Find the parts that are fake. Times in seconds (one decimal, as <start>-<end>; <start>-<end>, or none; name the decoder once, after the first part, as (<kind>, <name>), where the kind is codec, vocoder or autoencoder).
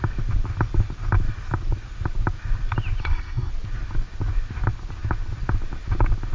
3.0-3.5 (codec, SNAC)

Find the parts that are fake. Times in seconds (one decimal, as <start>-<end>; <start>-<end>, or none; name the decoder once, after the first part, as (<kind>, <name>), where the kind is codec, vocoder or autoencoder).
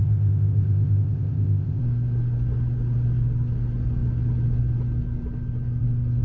0.0-1.8 (codec, ZipCodec)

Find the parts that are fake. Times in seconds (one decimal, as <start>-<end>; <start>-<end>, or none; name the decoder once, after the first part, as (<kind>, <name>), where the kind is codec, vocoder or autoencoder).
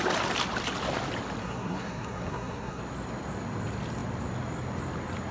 1.4-2.8 (codec, SNAC)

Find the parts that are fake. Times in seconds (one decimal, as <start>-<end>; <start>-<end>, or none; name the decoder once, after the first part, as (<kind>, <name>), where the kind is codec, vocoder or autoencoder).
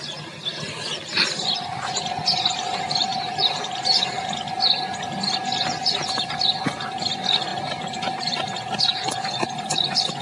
none